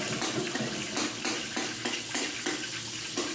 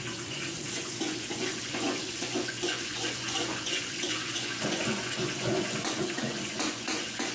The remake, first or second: second